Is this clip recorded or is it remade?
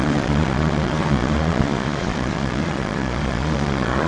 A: remade